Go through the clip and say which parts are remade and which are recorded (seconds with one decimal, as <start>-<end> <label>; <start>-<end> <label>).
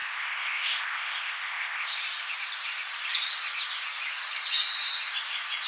0.0-2.0 remade; 2.0-5.7 recorded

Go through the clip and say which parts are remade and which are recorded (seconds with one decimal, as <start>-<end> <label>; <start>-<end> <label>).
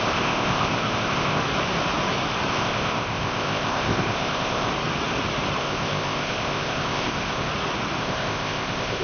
0.0-1.4 remade; 1.4-2.5 recorded; 2.5-4.7 remade; 4.7-5.6 recorded; 5.6-7.5 remade; 7.5-8.0 recorded; 8.0-9.0 remade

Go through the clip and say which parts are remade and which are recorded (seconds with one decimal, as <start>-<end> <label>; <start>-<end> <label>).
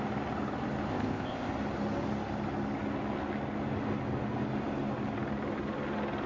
0.0-0.9 recorded; 0.9-1.5 remade; 1.5-6.3 recorded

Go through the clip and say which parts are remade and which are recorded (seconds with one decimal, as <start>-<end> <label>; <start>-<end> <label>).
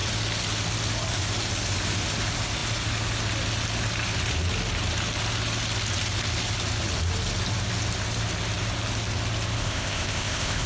0.0-9.6 recorded; 9.6-10.7 remade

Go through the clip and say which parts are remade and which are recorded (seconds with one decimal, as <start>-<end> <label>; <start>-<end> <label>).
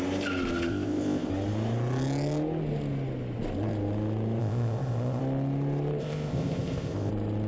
0.0-0.7 recorded; 0.7-1.3 remade; 1.3-4.4 recorded; 4.4-5.2 remade; 5.2-6.0 recorded; 6.0-7.1 remade; 7.1-7.5 recorded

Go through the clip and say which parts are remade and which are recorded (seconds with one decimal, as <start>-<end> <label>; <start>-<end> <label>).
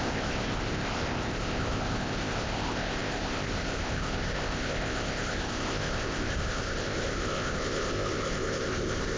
0.0-9.2 remade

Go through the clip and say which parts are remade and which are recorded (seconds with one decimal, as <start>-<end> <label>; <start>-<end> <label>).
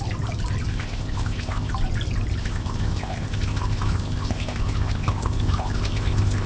0.0-0.7 recorded; 0.7-1.7 remade; 1.7-2.4 recorded; 2.4-6.5 remade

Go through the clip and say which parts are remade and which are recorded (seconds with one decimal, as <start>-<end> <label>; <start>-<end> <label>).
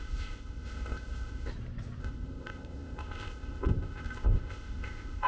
0.0-1.5 remade; 1.5-2.0 recorded; 2.0-5.3 remade